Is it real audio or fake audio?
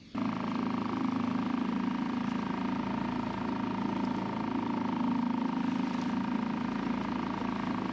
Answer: real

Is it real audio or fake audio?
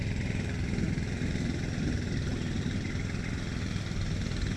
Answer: real